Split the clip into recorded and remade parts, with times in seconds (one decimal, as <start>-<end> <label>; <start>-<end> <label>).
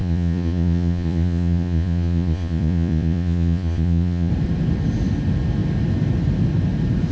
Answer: 0.0-4.3 remade; 4.3-7.1 recorded